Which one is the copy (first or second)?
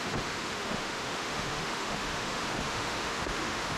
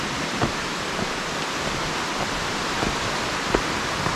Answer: first